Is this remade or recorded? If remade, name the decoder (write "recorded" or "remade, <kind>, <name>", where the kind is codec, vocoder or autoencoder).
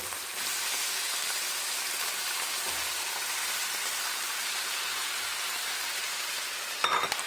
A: remade, vocoder, BigVGAN v2